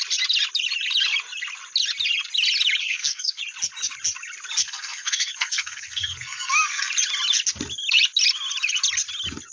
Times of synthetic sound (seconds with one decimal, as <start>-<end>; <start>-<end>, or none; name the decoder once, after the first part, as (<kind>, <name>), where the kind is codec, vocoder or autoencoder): 2.8-3.4 (codec, SNAC); 4.6-6.9

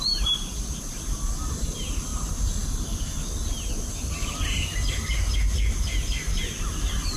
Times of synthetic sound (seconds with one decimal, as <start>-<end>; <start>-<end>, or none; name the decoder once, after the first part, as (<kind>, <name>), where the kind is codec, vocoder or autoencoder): none

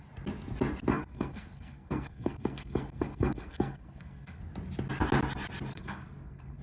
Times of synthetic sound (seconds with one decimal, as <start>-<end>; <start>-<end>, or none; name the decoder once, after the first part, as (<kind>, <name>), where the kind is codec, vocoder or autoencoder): 0.9-4.4 (codec, SNAC); 5.7-6.6

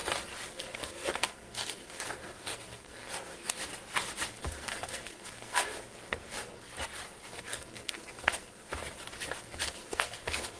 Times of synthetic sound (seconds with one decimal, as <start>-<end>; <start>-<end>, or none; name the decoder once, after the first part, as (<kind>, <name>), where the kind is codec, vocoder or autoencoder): 0.5-3.6 (codec, SNAC); 4.3-6.7; 7.3-8.7; 9.4-10.6